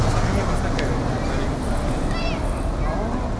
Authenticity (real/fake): real